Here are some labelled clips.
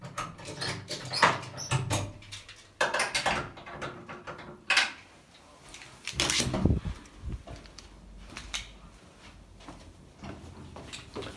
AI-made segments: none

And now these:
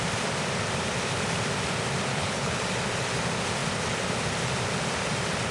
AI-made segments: 2.1-2.6

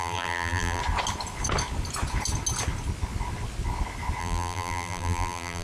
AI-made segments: 0.0-0.8; 4.2-5.6

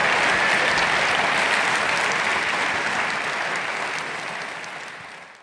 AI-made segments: none

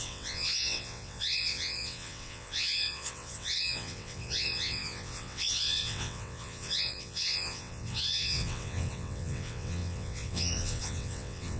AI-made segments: 0.0-11.6

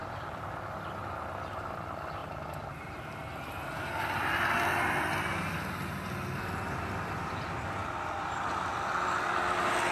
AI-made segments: none

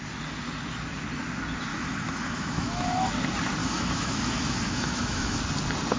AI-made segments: 1.7-3.1; 3.6-5.4

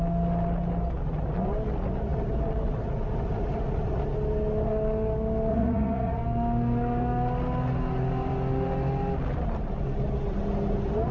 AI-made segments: 5.5-6.2